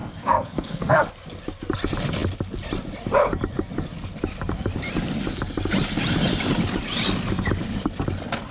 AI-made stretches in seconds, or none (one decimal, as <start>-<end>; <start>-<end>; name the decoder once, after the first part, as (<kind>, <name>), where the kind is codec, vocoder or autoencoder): 0.0-1.1 (codec, SNAC)